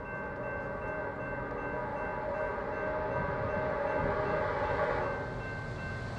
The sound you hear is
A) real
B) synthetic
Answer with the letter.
A